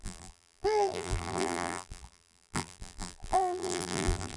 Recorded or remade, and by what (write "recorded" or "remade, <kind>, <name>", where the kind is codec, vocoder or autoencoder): remade, vocoder, BigVGAN v2